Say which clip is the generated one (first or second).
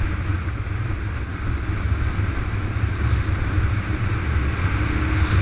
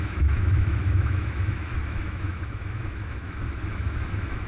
second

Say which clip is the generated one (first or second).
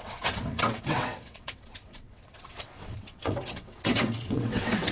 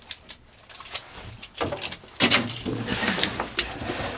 first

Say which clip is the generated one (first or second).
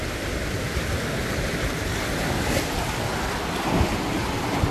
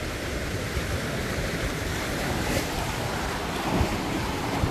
second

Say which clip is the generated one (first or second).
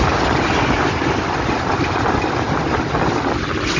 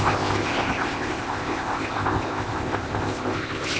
second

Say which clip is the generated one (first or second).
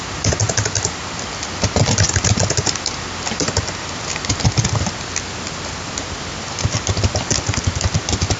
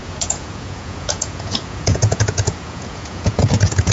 second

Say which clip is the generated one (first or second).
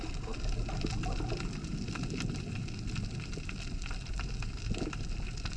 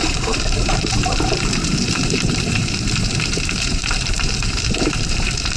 second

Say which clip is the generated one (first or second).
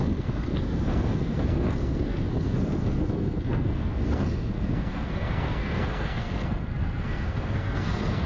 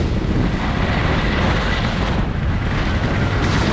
first